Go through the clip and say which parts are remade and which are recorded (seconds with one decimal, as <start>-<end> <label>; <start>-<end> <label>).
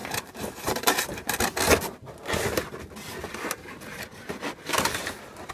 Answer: 0.0-1.4 remade; 1.4-5.5 recorded